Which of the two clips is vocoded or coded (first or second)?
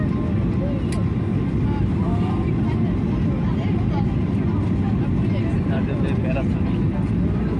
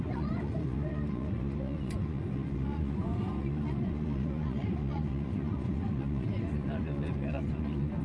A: second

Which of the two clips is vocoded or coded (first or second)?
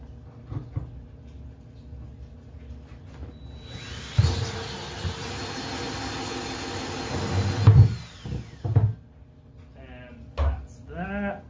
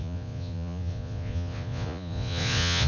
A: second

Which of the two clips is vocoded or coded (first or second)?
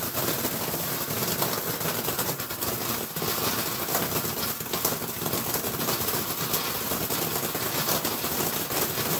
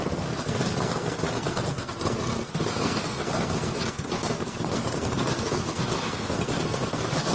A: second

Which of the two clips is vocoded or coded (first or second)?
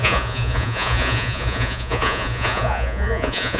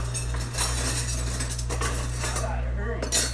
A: first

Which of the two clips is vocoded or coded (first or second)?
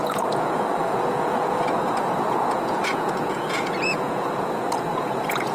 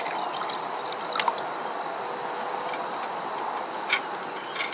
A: first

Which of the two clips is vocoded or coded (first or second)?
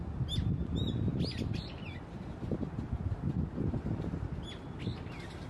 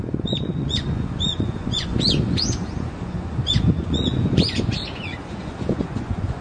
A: second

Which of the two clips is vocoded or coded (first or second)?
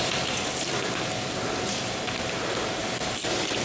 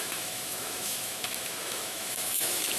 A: second